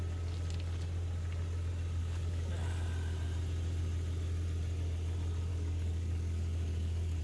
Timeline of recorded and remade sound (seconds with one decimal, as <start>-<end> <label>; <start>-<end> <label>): 0.0-2.0 recorded; 2.0-2.5 remade; 2.5-5.5 recorded; 5.5-7.2 remade